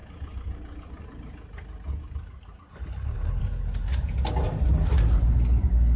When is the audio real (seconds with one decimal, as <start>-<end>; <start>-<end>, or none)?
0.0-2.7; 3.4-6.0